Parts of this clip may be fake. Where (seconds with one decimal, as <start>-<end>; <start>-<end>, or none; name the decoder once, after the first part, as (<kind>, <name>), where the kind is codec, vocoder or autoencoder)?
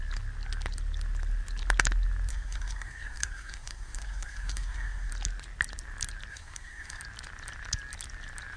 2.3-5.1 (codec, SNAC); 6.3-7.0